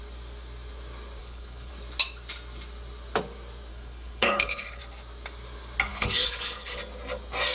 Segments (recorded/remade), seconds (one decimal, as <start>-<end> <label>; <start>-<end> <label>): 0.0-1.2 recorded; 1.2-1.7 remade; 1.7-3.7 recorded; 3.7-4.8 remade; 4.8-5.9 recorded; 5.9-6.8 remade; 6.8-7.5 recorded